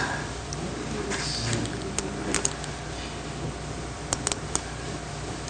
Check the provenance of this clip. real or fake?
real